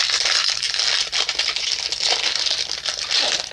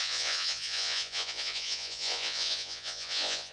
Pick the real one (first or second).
first